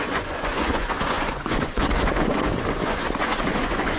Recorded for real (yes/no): no